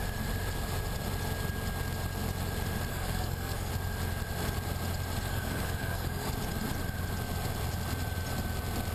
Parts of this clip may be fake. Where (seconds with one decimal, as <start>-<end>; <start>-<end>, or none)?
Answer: 2.9-3.7; 5.3-6.3